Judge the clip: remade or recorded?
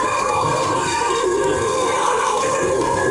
remade